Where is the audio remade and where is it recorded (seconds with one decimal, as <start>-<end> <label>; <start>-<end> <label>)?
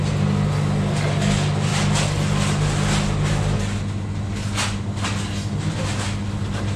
0.0-6.8 recorded